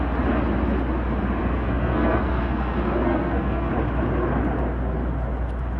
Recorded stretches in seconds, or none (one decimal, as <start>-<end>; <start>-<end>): 0.0-1.4; 3.7-5.8